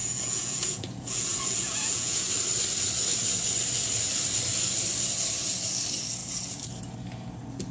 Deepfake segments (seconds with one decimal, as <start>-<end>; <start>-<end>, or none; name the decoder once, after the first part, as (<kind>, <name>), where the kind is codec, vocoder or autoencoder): 0.0-2.3 (vocoder, Vocos)